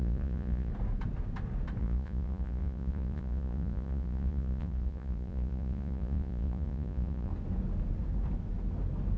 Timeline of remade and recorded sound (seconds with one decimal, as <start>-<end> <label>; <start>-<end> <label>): 0.0-0.7 remade; 0.7-1.8 recorded; 1.8-7.3 remade; 7.3-9.2 recorded